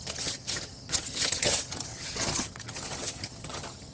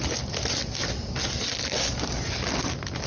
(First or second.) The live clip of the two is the second